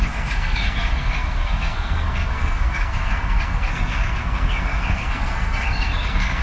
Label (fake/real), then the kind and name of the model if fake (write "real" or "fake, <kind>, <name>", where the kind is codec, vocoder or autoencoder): fake, codec, SNAC